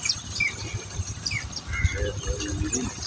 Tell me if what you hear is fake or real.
real